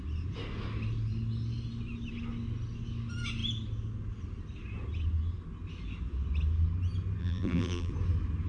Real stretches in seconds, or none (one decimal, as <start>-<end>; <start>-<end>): 0.0-7.2; 7.9-8.5